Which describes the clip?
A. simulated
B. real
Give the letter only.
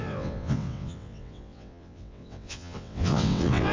A